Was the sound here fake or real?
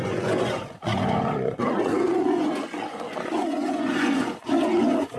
fake